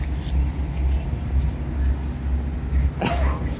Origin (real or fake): real